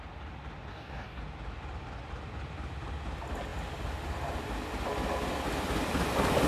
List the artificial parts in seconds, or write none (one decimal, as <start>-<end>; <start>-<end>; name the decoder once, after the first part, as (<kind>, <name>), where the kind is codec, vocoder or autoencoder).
0.7-1.2 (codec, DAC)

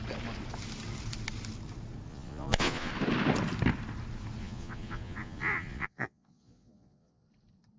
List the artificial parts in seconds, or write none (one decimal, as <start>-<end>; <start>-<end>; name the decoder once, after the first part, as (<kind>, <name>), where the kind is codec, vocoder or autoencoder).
2.1-2.9 (vocoder, Vocos); 4.4-7.2

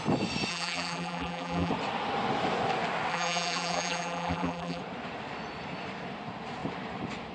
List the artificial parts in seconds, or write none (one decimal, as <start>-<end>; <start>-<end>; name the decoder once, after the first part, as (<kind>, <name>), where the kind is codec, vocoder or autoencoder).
0.5-1.7 (vocoder, BigVGAN v2); 3.1-4.8